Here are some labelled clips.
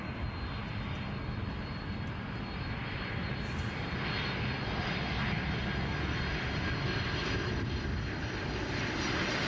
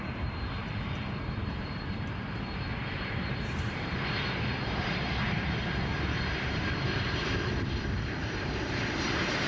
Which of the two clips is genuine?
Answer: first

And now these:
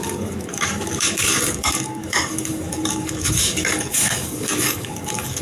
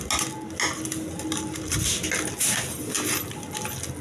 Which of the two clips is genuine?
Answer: second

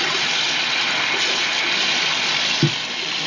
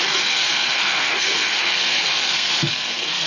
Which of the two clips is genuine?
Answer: first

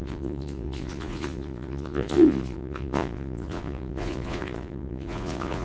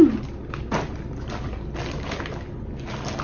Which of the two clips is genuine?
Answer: second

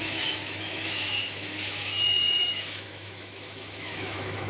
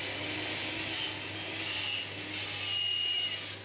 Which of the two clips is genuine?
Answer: second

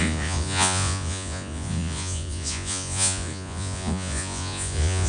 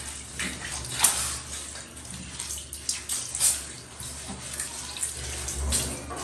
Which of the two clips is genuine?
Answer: second